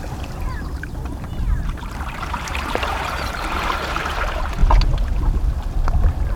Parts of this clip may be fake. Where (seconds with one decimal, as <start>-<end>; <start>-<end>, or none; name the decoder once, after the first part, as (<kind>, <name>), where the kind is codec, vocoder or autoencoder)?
0.0-4.6 (vocoder, BigVGAN v2)